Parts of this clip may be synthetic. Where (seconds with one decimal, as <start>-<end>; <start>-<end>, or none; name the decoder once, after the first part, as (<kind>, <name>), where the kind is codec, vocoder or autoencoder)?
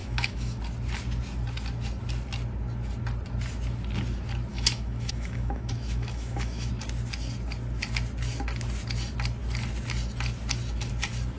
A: 0.0-0.6 (autoencoder, DAC-VAE); 4.5-6.7